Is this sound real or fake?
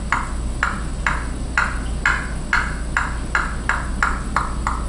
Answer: real